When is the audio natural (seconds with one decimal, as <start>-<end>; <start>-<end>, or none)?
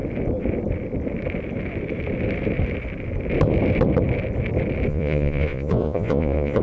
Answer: 0.0-4.9